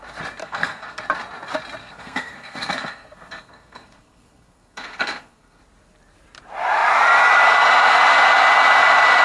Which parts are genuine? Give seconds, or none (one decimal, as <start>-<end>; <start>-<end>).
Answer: 0.0-0.4; 1.0-1.8; 5.6-9.2